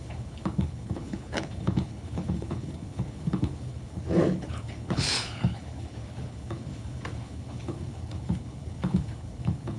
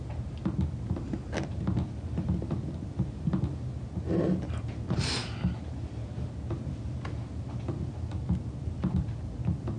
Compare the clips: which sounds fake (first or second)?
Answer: first